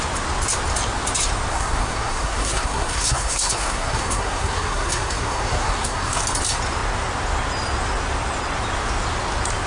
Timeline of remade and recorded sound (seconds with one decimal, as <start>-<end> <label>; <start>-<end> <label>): 0.0-1.5 recorded; 1.5-6.2 remade; 6.2-9.7 recorded